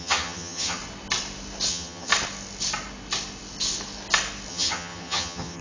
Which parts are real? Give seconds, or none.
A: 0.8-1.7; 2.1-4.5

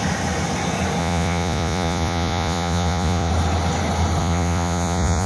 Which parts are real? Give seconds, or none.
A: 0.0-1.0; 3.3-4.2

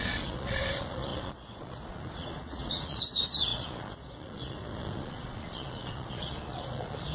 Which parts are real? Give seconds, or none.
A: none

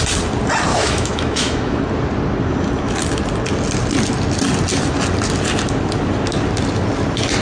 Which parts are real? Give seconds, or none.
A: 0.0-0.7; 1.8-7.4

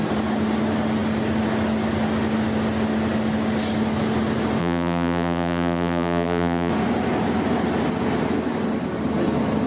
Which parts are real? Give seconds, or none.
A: 0.0-4.6; 6.7-9.7